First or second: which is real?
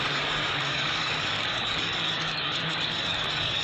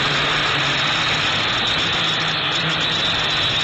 second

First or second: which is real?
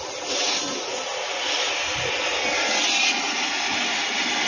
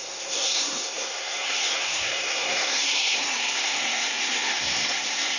first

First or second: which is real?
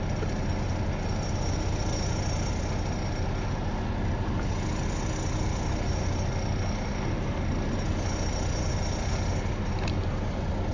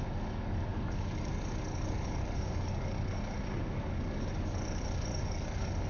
first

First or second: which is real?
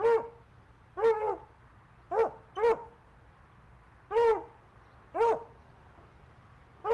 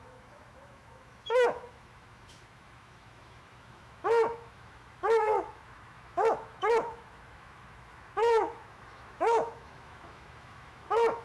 first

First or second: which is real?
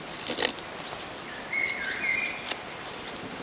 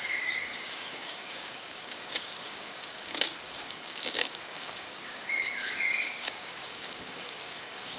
first